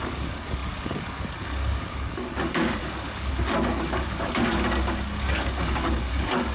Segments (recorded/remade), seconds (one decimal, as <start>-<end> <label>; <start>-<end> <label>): 0.0-6.5 remade